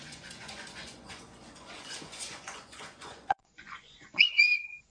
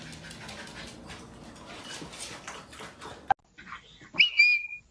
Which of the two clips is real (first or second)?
second